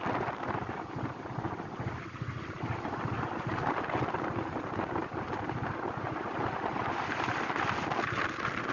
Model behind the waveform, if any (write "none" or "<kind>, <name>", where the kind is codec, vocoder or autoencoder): none